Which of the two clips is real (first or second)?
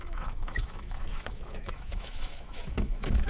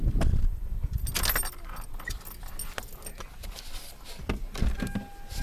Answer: second